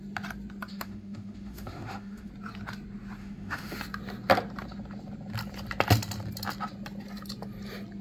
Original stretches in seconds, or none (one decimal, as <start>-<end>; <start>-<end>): 0.0-0.7; 2.3-3.2; 3.8-8.0